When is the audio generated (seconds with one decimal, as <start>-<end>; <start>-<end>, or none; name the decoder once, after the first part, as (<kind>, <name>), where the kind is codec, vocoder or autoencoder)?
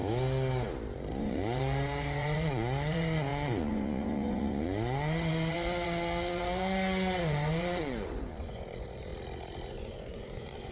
1.2-9.1 (vocoder, Vocos); 9.7-10.7